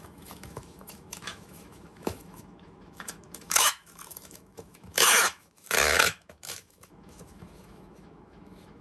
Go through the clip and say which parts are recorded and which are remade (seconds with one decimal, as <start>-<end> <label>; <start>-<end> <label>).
0.0-8.8 remade

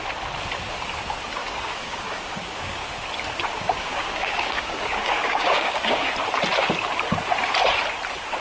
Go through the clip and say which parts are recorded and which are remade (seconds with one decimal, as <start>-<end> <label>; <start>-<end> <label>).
0.0-1.4 recorded; 1.4-3.0 remade; 3.0-3.5 recorded; 3.5-6.1 remade; 6.1-8.4 recorded

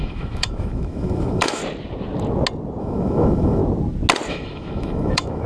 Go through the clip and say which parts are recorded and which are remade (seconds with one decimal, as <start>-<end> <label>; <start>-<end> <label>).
0.0-1.6 remade; 1.6-2.8 recorded; 2.8-3.6 remade; 3.6-4.3 recorded; 4.3-5.5 remade

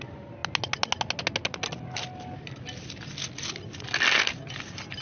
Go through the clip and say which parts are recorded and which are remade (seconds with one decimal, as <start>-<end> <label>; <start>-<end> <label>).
0.0-5.0 recorded